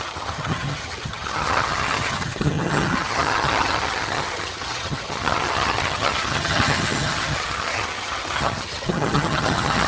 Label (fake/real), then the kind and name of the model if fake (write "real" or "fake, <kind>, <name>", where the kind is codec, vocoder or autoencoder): fake, vocoder, HiFi-GAN